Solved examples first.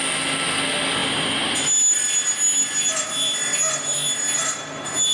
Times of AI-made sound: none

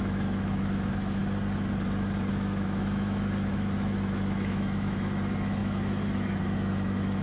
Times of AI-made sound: 0.0-1.2 (autoencoder, DAC-VAE); 2.3-7.2

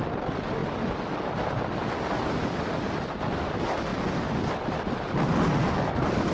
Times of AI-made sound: 3.9-4.9 (vocoder, BigVGAN v2)

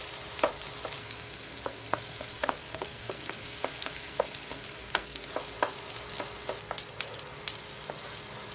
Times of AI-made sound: 1.0-5.3 (codec, SNAC)

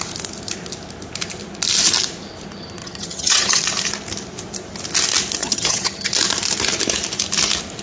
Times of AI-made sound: 2.8-3.6 (vocoder, HiFi-GAN); 5.4-6.1

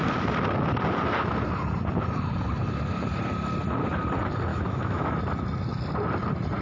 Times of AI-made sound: 4.5-5.1 (autoencoder, DAC-VAE)

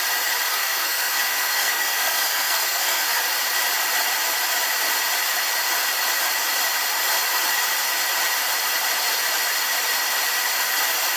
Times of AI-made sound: 0.5-3.2 (codec, SNAC)